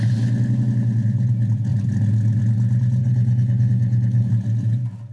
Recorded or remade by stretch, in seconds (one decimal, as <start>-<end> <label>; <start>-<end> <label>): 0.0-3.0 recorded; 3.0-4.3 remade; 4.3-5.1 recorded